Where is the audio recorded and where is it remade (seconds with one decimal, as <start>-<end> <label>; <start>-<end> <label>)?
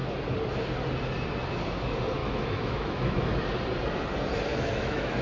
0.0-2.2 recorded; 2.2-3.4 remade; 3.4-4.5 recorded; 4.5-5.2 remade